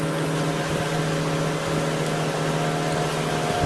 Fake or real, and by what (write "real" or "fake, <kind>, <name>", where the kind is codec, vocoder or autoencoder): real